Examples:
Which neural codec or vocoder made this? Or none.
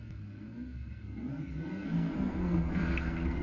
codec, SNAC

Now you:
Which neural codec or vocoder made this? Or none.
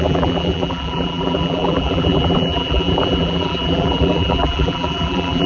vocoder, BigVGAN v2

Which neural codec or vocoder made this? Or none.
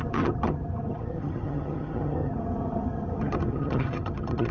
vocoder, HiFi-GAN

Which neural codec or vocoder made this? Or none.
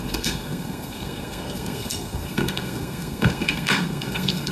codec, SNAC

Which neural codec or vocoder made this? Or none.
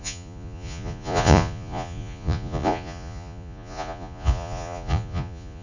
vocoder, Vocos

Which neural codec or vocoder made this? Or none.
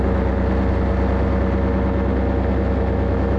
none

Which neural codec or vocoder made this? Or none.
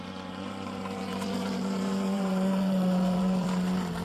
vocoder, BigVGAN v2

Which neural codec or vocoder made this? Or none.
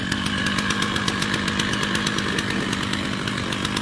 none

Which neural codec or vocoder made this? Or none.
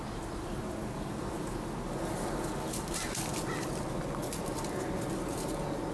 none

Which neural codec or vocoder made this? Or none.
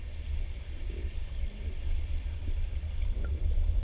none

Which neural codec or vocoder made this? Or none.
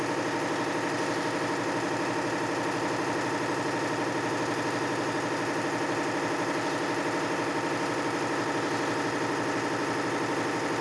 none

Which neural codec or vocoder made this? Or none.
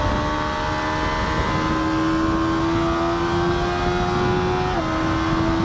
none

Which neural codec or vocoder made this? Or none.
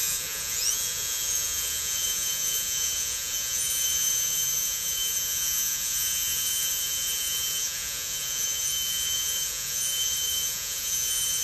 vocoder, Vocos